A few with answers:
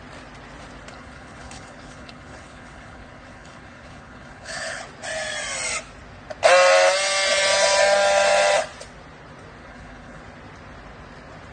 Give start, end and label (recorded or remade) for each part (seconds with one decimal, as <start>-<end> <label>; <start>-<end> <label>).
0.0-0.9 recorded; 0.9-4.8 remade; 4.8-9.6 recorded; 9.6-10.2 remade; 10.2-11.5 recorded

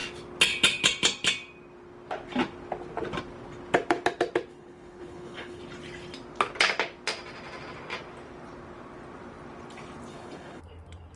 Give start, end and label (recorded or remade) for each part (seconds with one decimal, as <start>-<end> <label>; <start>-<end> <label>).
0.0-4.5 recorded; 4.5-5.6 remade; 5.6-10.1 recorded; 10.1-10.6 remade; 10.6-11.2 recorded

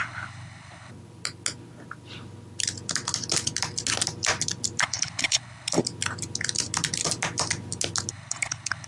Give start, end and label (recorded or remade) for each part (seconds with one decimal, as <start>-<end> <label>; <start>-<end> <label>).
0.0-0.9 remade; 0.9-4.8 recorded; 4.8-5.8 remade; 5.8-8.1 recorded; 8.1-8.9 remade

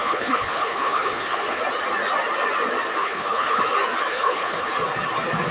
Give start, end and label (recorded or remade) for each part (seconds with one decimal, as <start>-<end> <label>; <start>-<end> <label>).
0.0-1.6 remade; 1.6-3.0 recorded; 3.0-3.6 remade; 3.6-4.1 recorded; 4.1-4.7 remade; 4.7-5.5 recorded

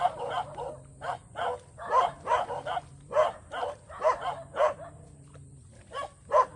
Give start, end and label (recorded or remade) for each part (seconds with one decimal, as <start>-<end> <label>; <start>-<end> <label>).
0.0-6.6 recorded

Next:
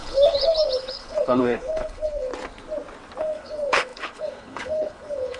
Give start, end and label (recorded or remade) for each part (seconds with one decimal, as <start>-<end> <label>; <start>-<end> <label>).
0.0-2.3 remade; 2.3-3.2 recorded; 3.2-5.4 remade

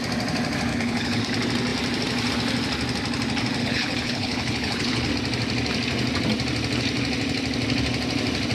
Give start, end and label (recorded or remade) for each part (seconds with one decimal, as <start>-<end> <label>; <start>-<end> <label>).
0.0-0.7 recorded; 0.7-1.2 remade; 1.2-3.6 recorded; 3.6-5.1 remade; 5.1-8.5 recorded